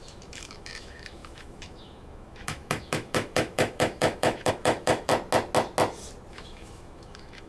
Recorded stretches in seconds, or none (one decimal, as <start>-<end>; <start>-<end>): 5.1-6.3